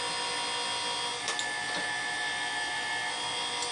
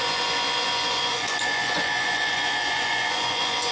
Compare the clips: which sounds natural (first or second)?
first